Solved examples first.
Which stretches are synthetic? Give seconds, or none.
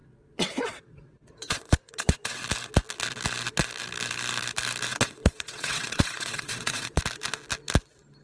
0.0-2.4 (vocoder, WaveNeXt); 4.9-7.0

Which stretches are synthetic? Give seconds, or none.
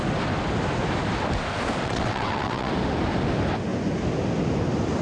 1.8-2.7 (vocoder, WaveNeXt)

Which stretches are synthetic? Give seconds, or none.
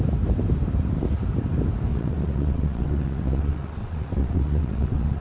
1.9-5.2 (vocoder, WaveNeXt)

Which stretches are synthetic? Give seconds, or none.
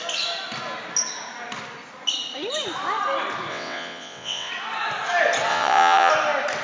3.5-4.5 (vocoder, WaveNeXt); 5.5-6.1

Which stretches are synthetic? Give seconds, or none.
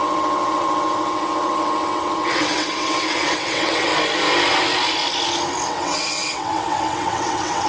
0.0-3.9 (vocoder, WaveNeXt); 5.7-7.7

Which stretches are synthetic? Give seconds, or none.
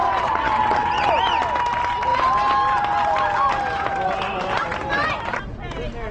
0.0-1.1 (vocoder, WaveNeXt)